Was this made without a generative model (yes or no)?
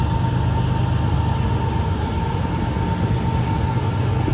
yes